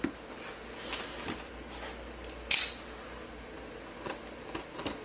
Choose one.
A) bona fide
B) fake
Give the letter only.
A